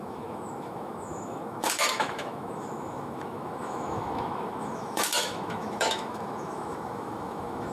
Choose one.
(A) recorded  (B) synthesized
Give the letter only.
B